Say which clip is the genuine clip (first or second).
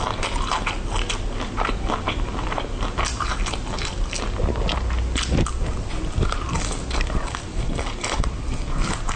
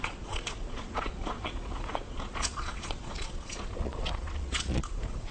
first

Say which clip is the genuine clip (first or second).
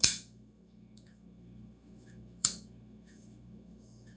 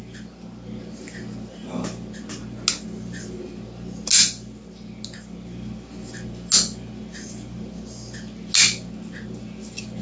second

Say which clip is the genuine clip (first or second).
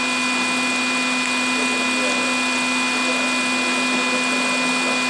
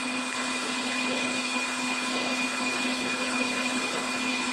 first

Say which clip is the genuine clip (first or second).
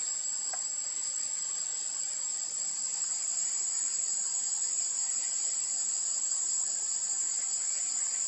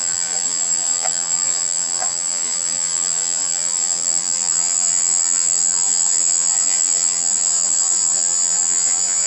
first